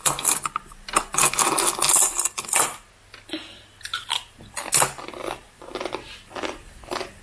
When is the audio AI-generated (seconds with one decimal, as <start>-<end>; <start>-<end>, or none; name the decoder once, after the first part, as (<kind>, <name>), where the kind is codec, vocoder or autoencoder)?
none